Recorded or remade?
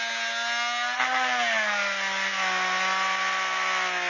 recorded